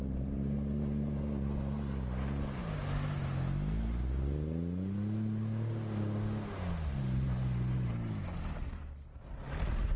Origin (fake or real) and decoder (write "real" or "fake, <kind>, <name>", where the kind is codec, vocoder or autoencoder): real